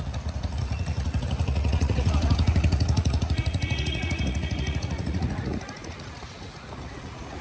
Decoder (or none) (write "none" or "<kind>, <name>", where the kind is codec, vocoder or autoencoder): vocoder, Vocos